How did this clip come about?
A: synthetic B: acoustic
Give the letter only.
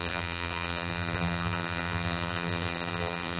A